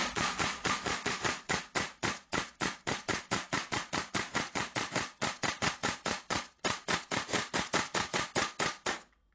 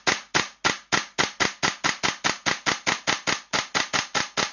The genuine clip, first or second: second